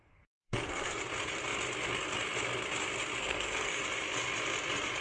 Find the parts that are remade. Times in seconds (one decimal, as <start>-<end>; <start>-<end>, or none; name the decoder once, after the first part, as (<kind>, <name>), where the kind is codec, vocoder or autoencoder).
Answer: 0.0-1.0 (codec, SNAC); 3.2-3.8